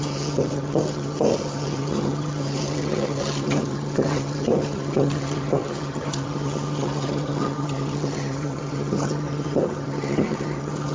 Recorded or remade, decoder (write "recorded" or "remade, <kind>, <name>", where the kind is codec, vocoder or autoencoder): remade, vocoder, HiFi-GAN